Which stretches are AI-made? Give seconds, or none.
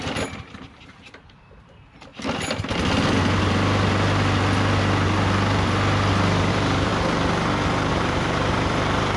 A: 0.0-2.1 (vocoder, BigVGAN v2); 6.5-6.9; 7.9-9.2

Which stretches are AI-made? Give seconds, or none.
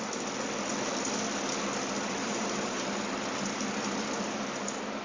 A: 2.2-2.9 (vocoder, BigVGAN v2)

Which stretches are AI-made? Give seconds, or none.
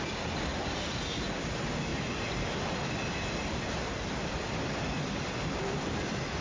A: 0.5-1.0 (vocoder, BigVGAN v2); 1.9-5.7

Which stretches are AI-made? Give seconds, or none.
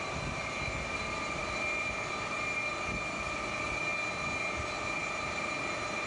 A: 1.4-2.1 (vocoder, BigVGAN v2)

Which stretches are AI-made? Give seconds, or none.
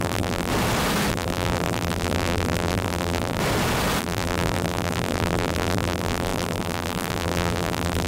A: 0.0-0.5 (vocoder, BigVGAN v2); 1.1-3.4; 4.0-8.1